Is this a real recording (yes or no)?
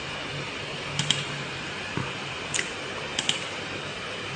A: no